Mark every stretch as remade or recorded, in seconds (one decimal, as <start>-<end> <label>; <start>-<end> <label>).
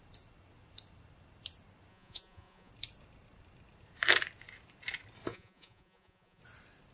0.0-1.9 recorded; 1.9-2.7 remade; 2.7-5.3 recorded; 5.3-6.4 remade; 6.4-6.9 recorded